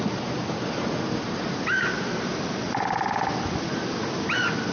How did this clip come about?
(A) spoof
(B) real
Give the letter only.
B